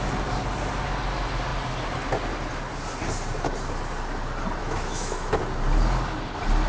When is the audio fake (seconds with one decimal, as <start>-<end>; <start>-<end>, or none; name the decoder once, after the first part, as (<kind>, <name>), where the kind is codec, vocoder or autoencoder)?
4.6-5.4 (autoencoder, DAC-VAE)

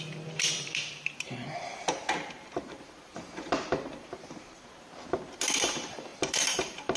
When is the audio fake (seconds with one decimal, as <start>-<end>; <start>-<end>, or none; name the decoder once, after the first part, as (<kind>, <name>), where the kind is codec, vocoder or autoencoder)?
0.0-2.0 (vocoder, BigVGAN v2); 2.6-7.0

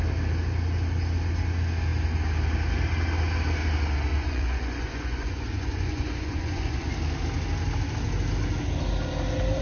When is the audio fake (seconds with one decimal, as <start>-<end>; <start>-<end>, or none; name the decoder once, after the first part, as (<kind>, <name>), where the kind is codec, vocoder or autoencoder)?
4.1-6.9 (vocoder, Vocos)

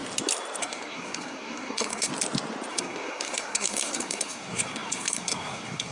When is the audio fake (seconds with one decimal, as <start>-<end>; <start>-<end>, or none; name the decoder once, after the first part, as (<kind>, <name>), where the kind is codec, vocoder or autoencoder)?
0.6-2.1 (codec, SNAC); 2.7-5.9

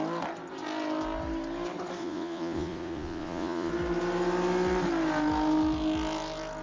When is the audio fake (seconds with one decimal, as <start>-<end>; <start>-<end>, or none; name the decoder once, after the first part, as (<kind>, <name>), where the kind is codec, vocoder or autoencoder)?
2.0-3.7 (vocoder, Vocos)

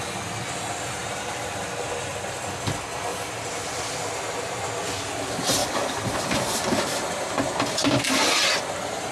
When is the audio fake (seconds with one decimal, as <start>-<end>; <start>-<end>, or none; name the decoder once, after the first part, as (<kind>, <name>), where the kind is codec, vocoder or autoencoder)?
1.0-1.6 (vocoder, BigVGAN v2); 3.1-4.1; 5.6-8.1

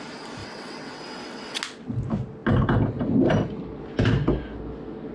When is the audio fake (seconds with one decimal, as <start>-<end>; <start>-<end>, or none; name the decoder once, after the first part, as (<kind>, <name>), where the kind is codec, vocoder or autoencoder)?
0.4-1.6 (vocoder, WaveNeXt)

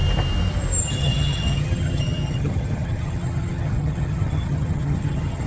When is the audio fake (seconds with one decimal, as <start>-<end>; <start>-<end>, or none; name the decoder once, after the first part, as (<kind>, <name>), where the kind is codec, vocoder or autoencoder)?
0.8-5.5 (vocoder, HiFi-GAN)